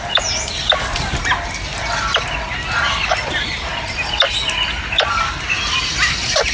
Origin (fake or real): real